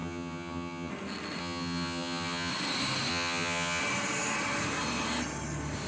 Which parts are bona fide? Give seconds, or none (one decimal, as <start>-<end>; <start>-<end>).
0.9-1.4; 2.5-3.1; 3.8-5.9